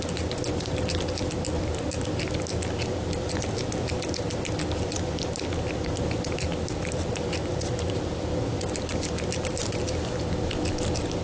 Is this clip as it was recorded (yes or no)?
yes